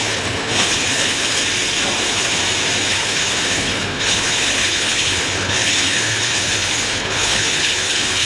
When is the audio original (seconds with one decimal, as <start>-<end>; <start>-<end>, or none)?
1.4-2.0; 2.4-2.9